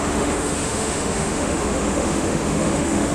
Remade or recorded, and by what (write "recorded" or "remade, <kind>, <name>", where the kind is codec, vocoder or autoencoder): remade, autoencoder, DAC-VAE